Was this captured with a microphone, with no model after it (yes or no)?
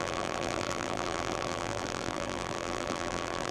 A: no